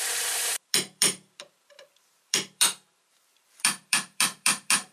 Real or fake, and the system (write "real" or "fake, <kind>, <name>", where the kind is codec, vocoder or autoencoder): fake, vocoder, BigVGAN v2